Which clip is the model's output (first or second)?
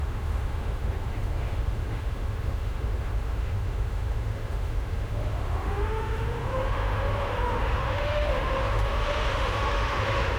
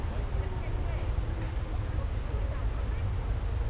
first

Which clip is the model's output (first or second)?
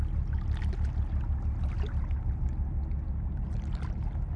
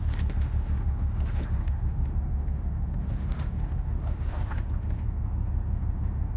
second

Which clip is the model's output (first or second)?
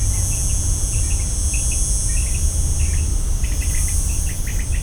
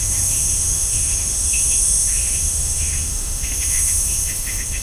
second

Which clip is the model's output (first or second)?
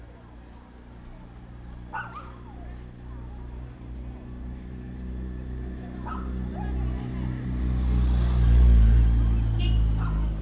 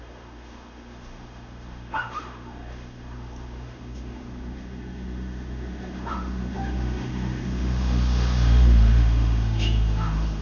second